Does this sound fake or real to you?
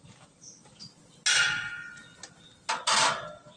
real